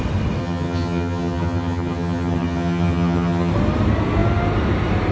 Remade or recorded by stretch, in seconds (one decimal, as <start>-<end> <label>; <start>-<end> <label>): 0.0-0.4 recorded; 0.4-3.5 remade; 3.5-5.1 recorded

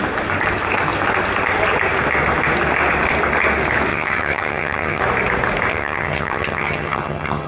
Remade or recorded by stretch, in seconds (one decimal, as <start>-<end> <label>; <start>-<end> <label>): 0.0-3.9 recorded; 3.9-5.0 remade; 5.0-5.7 recorded; 5.7-7.5 remade

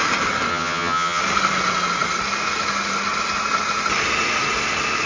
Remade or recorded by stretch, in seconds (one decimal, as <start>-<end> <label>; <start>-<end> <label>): 0.0-0.5 recorded; 0.5-1.2 remade; 1.2-5.1 recorded